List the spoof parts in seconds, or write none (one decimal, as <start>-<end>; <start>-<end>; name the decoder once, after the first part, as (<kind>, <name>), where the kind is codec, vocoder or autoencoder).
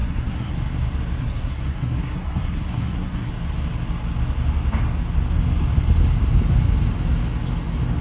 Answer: 0.0-0.5 (codec, SNAC); 1.2-3.3